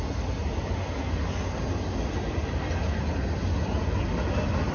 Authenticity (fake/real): real